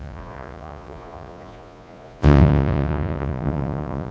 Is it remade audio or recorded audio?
remade